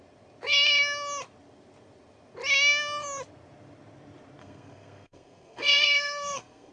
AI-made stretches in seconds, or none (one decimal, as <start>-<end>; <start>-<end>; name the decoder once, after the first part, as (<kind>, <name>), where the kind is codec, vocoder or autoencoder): 4.4-6.7 (codec, SNAC)